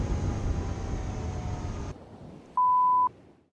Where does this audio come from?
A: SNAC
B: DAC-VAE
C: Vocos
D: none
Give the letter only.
D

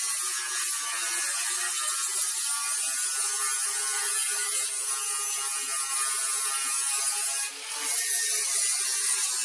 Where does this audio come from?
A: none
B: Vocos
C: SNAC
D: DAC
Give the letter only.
A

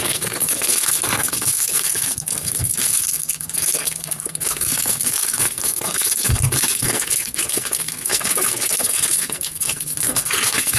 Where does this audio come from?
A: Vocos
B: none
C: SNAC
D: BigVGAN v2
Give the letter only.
C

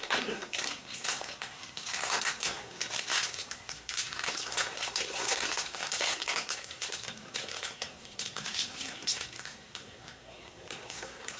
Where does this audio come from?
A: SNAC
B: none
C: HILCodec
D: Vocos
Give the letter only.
A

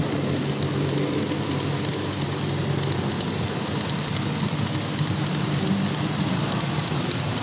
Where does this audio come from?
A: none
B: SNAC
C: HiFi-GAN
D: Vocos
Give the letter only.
A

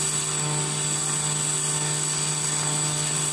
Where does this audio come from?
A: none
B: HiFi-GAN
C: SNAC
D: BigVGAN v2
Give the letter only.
A